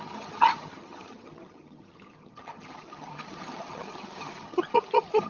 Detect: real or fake fake